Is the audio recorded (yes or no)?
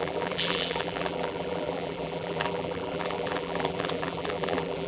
no